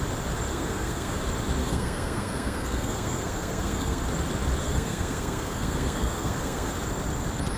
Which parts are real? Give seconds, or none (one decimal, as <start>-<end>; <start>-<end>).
0.0-0.5; 1.2-1.6; 4.0-4.6; 6.7-7.6